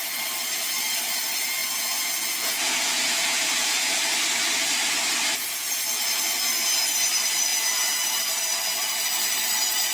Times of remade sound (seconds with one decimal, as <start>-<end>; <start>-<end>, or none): 1.6-3.9; 7.5-8.2